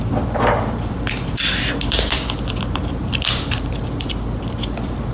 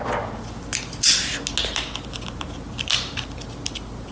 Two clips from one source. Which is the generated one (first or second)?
first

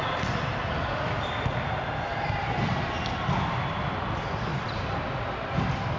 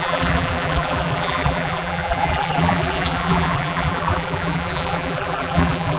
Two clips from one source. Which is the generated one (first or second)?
second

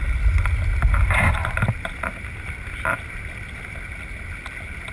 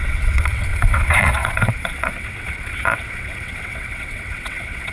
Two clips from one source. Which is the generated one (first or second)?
second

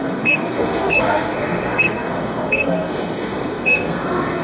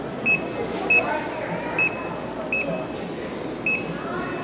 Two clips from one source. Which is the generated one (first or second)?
first